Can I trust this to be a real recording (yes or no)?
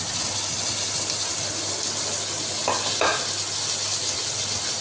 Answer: yes